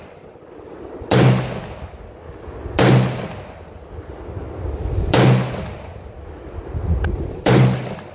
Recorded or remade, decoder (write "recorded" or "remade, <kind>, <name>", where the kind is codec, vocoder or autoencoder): recorded